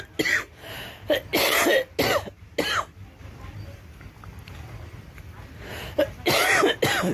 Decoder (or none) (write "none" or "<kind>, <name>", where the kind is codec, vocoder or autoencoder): none